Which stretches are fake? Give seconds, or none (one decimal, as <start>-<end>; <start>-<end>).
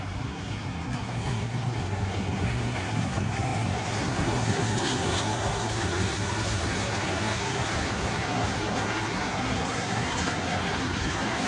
0.0-11.5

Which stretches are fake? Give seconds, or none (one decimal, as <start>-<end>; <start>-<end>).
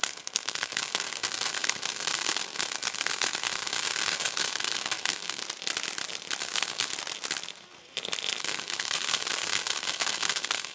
0.0-5.4; 6.4-6.9; 8.4-10.7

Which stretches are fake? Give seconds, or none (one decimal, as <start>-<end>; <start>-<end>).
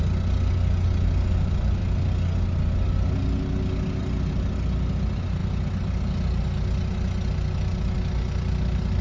none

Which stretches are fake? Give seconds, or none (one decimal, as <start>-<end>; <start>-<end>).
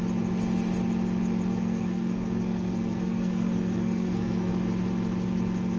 1.5-4.5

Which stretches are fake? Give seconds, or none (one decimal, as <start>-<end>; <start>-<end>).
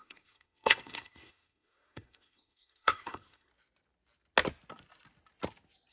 0.0-3.5